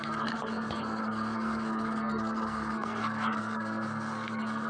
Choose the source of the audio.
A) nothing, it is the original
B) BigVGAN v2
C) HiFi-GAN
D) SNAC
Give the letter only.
D